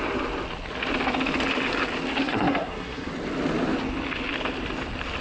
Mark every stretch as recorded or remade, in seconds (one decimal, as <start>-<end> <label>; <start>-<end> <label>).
0.0-2.2 recorded; 2.2-3.1 remade; 3.1-5.2 recorded